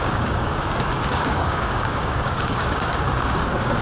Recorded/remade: remade